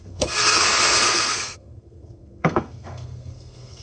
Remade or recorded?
remade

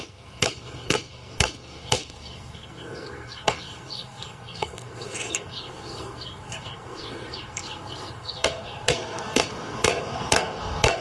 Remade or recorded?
remade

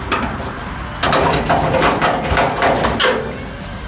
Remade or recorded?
recorded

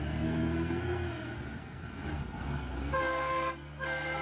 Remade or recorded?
remade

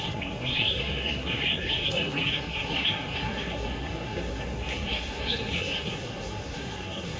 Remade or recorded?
remade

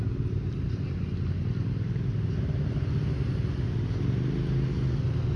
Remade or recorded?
recorded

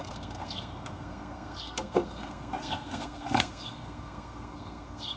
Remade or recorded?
remade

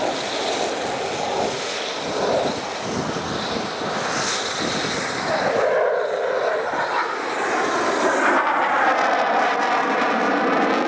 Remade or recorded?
recorded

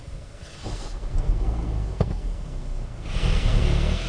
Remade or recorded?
remade